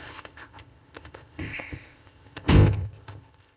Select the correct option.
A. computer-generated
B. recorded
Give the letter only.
A